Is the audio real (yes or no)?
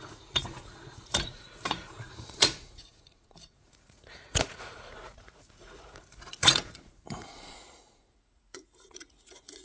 no